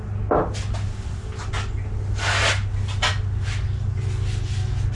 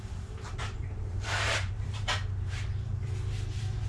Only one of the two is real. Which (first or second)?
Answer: first